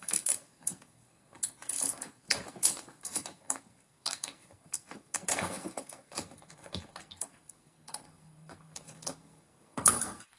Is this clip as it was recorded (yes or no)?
no